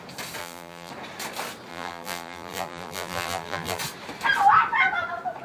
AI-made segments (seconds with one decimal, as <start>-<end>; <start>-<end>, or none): 0.4-0.9; 1.7-3.8